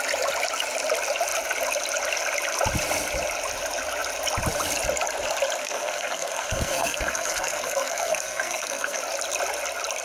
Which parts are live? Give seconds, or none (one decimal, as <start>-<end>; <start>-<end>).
0.0-5.6; 9.0-10.0